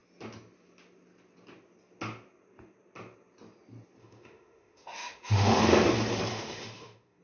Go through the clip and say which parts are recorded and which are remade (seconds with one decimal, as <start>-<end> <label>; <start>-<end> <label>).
0.0-4.0 recorded; 4.0-5.6 remade; 5.6-6.3 recorded; 6.3-7.2 remade